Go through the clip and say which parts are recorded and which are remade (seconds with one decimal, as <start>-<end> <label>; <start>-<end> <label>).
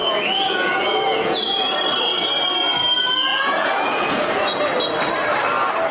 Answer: 0.0-1.7 remade; 1.7-3.3 recorded; 3.3-4.6 remade; 4.6-5.9 recorded